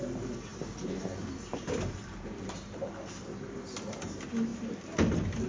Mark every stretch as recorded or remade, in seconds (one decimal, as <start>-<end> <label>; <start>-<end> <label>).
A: 0.0-0.5 recorded; 0.5-2.9 remade; 2.9-5.5 recorded